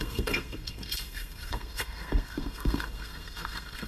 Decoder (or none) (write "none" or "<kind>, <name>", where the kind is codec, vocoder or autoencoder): codec, SNAC